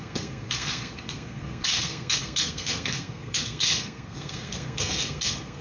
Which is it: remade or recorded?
remade